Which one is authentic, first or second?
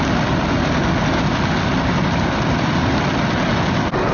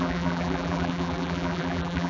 first